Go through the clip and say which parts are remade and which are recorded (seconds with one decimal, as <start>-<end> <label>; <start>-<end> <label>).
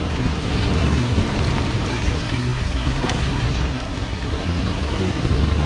0.0-1.2 remade; 1.2-1.9 recorded; 1.9-5.7 remade